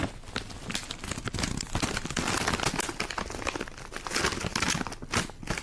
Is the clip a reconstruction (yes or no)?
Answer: no